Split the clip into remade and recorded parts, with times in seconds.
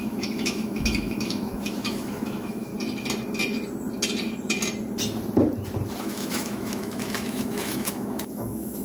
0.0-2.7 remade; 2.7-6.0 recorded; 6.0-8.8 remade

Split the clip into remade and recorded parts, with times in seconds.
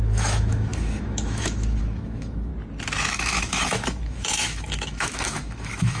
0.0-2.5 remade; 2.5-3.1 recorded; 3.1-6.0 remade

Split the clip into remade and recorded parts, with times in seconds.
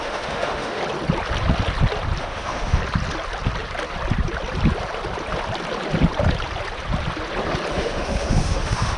0.0-0.8 remade; 0.8-2.2 recorded; 2.2-2.8 remade; 2.8-7.7 recorded; 7.7-9.0 remade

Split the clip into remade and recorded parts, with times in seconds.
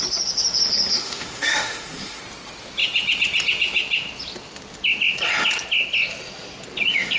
0.0-0.9 recorded; 0.9-2.2 remade; 2.2-7.2 recorded